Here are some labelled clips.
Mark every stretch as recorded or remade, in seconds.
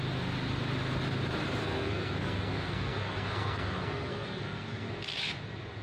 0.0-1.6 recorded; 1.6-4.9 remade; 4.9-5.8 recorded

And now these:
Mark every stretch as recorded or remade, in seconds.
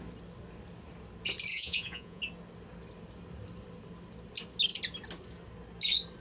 0.0-1.5 recorded; 1.5-2.2 remade; 2.2-6.2 recorded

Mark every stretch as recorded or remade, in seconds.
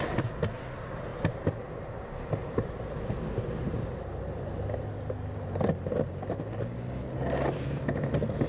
0.0-8.5 recorded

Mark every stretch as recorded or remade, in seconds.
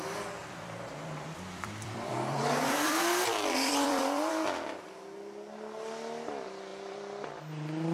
0.0-0.4 recorded; 0.4-4.3 remade; 4.3-6.7 recorded; 6.7-7.3 remade; 7.3-7.9 recorded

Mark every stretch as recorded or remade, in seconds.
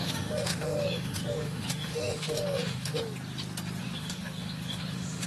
0.0-3.0 remade; 3.0-3.8 recorded; 3.8-5.3 remade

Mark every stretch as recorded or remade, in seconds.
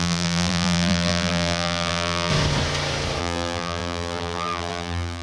0.0-2.3 remade; 2.3-3.2 recorded; 3.2-5.2 remade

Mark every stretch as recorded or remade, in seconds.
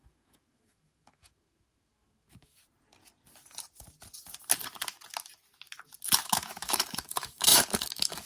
0.0-2.6 remade; 2.6-6.2 recorded; 6.2-8.3 remade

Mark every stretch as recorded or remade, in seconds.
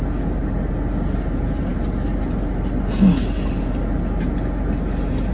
0.0-5.3 recorded